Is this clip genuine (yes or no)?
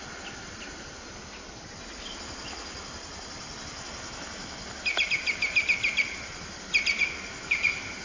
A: yes